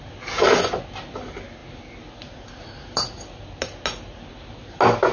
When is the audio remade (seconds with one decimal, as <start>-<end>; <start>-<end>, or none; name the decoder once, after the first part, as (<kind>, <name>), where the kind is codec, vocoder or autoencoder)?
none